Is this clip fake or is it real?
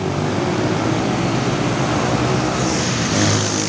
real